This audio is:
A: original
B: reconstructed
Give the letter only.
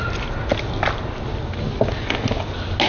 A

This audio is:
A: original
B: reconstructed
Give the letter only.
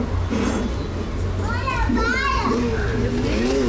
A